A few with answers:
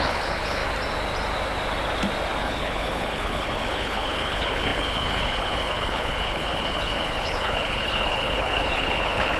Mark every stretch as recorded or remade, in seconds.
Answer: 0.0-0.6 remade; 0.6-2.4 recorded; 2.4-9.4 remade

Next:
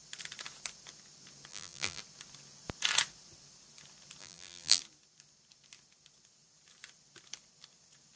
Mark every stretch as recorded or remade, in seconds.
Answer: 0.0-1.5 recorded; 1.5-2.0 remade; 2.0-4.2 recorded; 4.2-4.8 remade; 4.8-8.2 recorded